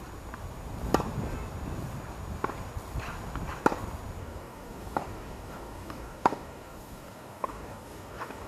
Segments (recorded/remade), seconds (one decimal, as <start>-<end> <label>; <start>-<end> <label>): 0.0-4.2 recorded; 4.2-8.5 remade